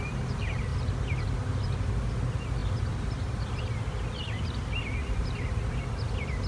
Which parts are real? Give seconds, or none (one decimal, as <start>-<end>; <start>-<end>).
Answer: 0.0-6.5